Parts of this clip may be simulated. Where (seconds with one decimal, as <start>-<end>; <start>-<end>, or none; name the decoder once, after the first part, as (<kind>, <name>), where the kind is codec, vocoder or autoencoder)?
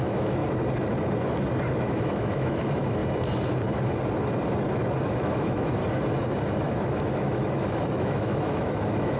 0.0-0.4 (autoencoder, DAC-VAE); 1.7-3.0; 5.0-5.8; 6.6-9.2